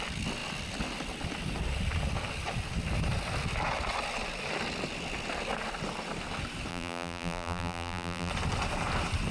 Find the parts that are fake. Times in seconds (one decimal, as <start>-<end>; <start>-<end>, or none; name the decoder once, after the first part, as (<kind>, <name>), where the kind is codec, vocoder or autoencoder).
6.7-8.3 (vocoder, BigVGAN v2)